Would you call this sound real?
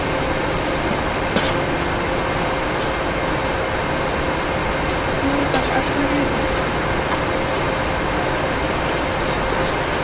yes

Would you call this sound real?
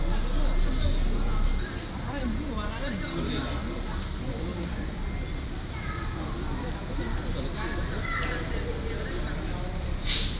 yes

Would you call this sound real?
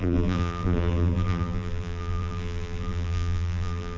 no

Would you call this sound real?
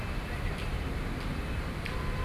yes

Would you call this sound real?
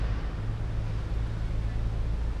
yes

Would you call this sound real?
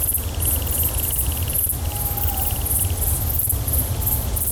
yes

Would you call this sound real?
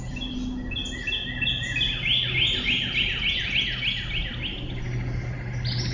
yes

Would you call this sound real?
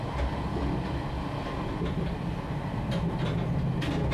yes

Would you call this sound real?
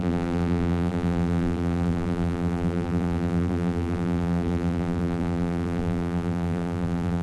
no